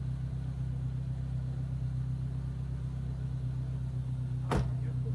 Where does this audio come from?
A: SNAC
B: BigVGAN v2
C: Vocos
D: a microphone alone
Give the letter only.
D